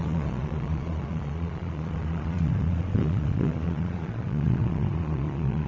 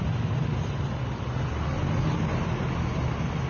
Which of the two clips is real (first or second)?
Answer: second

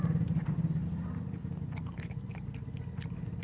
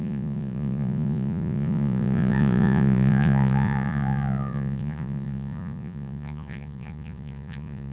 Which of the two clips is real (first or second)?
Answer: first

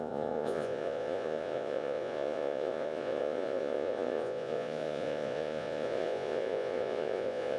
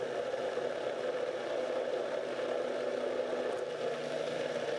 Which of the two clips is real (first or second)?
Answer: second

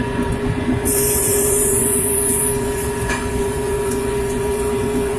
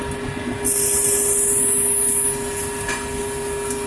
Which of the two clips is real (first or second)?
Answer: second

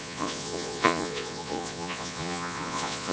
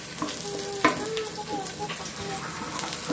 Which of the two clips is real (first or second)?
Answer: second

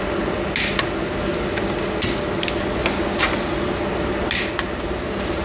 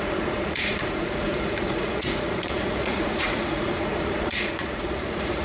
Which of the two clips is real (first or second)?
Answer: first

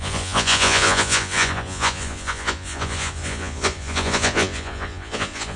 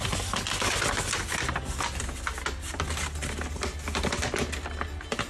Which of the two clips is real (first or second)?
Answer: second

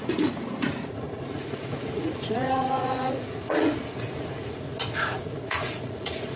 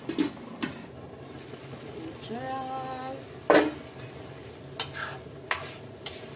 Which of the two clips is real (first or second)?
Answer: second